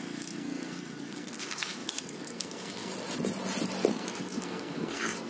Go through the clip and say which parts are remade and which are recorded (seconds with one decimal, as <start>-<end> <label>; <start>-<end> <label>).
0.0-2.9 remade; 2.9-3.9 recorded; 3.9-5.3 remade

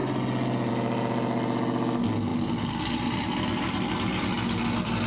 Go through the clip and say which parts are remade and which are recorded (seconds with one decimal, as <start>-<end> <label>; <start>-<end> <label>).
0.0-5.1 recorded

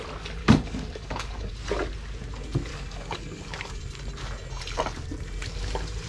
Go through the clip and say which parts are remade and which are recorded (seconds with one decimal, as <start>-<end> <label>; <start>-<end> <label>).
0.0-0.4 recorded; 0.4-1.5 remade; 1.5-2.7 recorded; 2.7-3.8 remade; 3.8-6.1 recorded

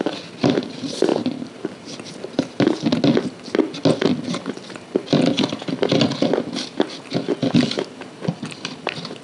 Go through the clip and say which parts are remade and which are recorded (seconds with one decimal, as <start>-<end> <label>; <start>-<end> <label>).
0.0-1.1 recorded; 1.1-2.0 remade; 2.0-9.2 recorded

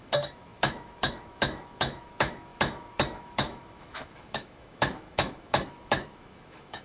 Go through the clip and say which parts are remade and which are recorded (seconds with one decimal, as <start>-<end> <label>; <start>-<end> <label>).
0.0-6.8 remade